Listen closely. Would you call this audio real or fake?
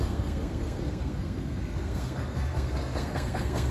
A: fake